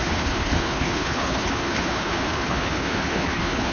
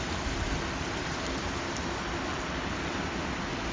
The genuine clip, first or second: second